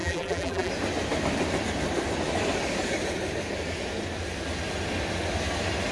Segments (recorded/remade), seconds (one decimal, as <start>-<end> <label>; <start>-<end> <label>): 0.0-0.7 remade; 0.7-5.9 recorded